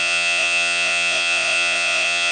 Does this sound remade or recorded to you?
remade